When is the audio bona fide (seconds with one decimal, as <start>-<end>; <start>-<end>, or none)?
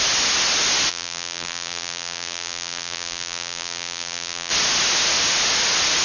0.0-0.9; 4.5-6.0